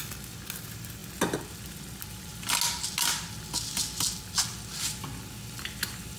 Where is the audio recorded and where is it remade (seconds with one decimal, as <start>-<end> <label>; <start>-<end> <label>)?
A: 0.0-6.2 recorded